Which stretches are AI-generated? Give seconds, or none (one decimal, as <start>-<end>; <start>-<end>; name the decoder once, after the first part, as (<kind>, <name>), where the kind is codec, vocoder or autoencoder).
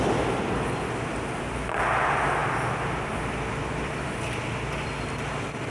none